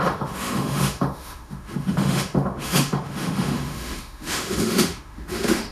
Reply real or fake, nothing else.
fake